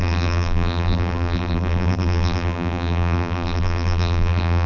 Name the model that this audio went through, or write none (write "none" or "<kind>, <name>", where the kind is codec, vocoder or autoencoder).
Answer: vocoder, BigVGAN v2